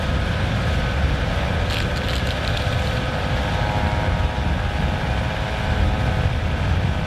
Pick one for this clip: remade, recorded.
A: recorded